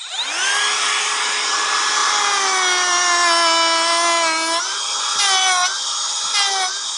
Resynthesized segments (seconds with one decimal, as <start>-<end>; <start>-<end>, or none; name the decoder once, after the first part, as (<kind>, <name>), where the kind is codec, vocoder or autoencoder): none